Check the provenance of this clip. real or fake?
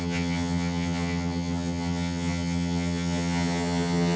fake